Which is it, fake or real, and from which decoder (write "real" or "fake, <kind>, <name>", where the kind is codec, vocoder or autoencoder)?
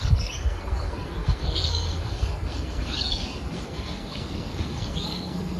fake, codec, SNAC